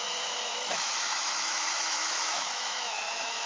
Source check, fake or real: fake